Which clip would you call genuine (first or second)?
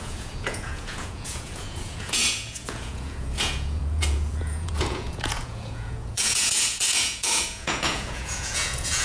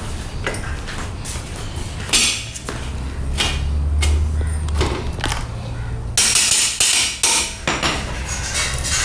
second